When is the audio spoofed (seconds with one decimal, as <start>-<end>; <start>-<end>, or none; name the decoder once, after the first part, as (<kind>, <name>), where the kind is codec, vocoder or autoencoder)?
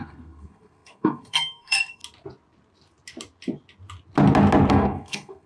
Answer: 0.0-2.0 (codec, SNAC); 4.7-5.5